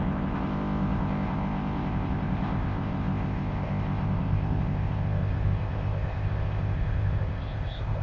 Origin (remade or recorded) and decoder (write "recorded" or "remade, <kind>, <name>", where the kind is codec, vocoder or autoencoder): remade, codec, ZipCodec